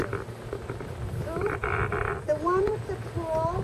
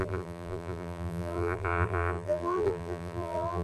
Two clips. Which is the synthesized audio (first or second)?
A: second